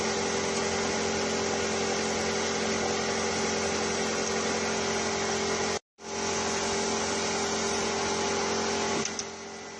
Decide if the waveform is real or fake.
real